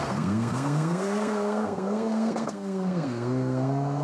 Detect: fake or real fake